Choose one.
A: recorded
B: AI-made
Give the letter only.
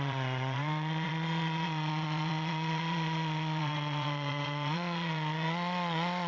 B